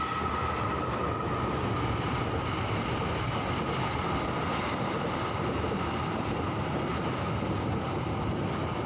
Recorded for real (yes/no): no